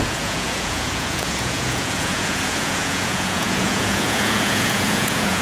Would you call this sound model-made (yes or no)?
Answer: yes